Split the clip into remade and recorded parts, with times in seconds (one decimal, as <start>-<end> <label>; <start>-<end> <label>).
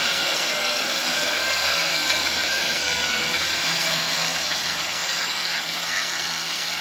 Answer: 0.0-6.8 remade